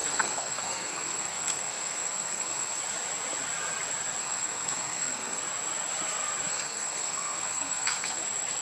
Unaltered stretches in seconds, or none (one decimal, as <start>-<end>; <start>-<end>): 2.8-4.2; 5.4-6.5; 8.2-8.6